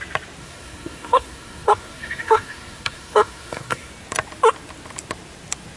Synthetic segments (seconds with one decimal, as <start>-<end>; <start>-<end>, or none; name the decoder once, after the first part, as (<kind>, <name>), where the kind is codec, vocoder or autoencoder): 0.4-3.9 (codec, SNAC)